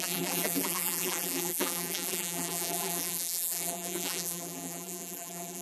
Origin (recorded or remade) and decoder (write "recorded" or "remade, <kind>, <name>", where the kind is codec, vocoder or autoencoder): remade, vocoder, BigVGAN v2